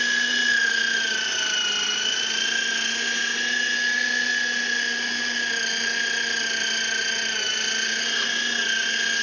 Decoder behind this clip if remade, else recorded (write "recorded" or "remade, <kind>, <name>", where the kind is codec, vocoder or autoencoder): recorded